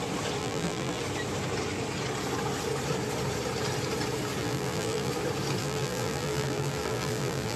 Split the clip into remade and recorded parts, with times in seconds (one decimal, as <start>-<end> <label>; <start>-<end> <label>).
0.0-0.4 recorded; 0.4-1.0 remade; 1.0-4.4 recorded; 4.4-5.1 remade; 5.1-5.6 recorded; 5.6-7.6 remade